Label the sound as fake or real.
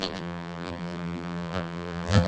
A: fake